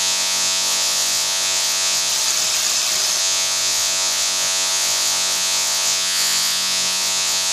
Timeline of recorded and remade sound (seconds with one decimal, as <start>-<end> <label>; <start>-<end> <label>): 0.0-2.1 remade; 2.1-3.2 recorded; 3.2-7.5 remade